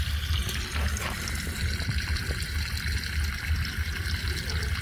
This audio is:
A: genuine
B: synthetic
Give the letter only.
A